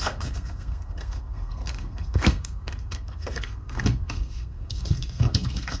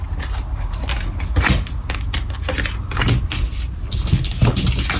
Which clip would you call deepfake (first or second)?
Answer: first